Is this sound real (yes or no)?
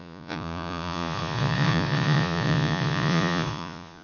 no